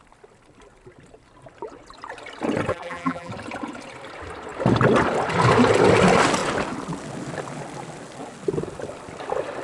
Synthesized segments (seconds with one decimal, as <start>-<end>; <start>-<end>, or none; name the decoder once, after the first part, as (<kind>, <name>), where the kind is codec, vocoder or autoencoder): 2.7-3.3 (vocoder, BigVGAN v2)